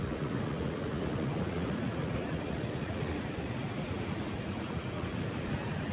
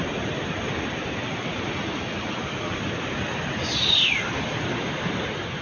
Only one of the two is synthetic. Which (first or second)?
first